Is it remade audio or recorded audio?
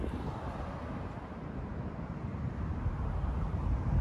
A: recorded